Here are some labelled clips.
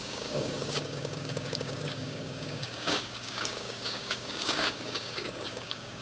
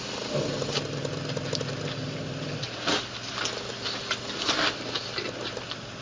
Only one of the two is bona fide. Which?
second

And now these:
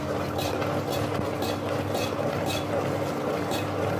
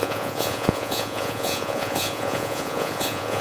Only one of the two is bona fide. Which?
first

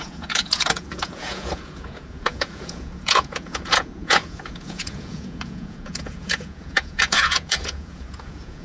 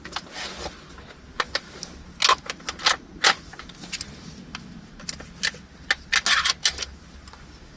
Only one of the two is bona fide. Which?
second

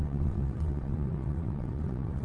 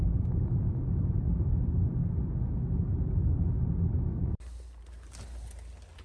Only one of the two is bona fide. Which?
second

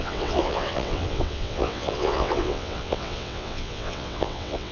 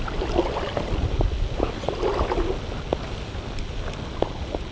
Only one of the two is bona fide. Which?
second